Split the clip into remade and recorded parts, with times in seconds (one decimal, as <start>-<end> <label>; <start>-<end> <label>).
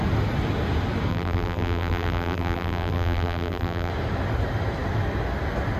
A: 0.0-1.1 recorded; 1.1-3.9 remade; 3.9-5.8 recorded